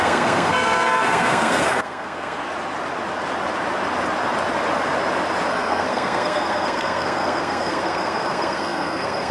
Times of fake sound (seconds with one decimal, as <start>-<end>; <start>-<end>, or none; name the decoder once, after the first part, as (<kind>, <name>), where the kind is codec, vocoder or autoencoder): 0.0-2.4 (codec, SNAC); 5.5-9.3

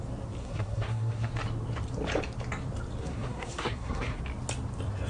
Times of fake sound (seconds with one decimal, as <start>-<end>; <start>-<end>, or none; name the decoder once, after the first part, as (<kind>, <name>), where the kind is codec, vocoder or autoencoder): 0.4-1.3 (codec, SNAC); 3.0-4.2